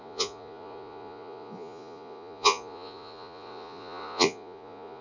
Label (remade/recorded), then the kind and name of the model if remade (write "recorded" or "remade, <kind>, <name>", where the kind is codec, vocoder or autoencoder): remade, vocoder, Vocos